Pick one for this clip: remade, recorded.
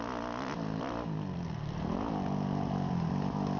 recorded